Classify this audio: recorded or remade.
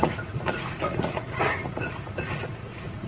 remade